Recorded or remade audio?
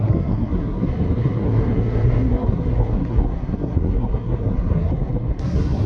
remade